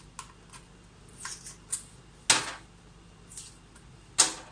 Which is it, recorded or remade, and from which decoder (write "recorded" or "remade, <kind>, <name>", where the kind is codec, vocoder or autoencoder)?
recorded